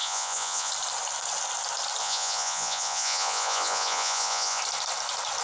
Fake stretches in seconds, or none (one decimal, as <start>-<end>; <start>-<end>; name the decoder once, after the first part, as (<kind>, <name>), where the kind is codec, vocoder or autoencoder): 0.0-0.7 (vocoder, Vocos); 2.0-4.6